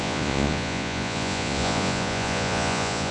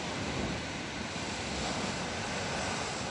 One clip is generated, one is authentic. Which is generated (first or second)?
first